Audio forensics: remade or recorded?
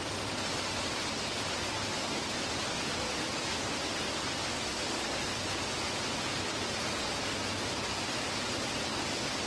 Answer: recorded